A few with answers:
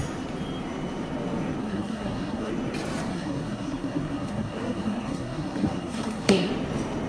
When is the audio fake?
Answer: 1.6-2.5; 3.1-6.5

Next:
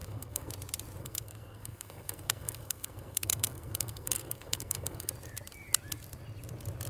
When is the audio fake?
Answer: 0.0-0.5; 1.0-5.1

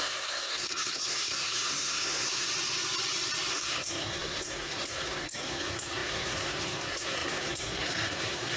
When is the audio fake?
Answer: 0.0-2.5; 3.5-8.6

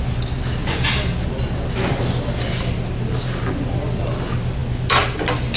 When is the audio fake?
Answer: none

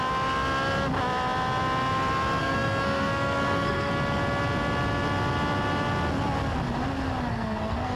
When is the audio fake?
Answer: 2.4-3.9; 7.3-8.0